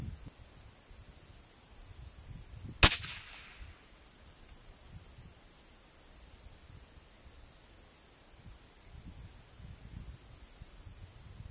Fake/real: real